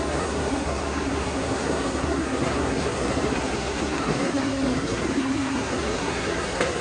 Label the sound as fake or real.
fake